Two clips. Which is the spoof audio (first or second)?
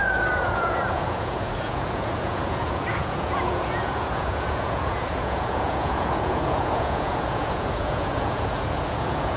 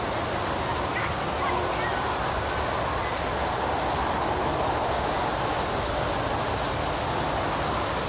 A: first